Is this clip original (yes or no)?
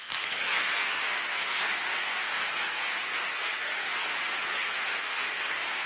no